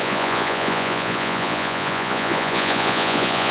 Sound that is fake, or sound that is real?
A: fake